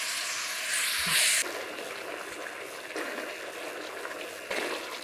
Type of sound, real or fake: real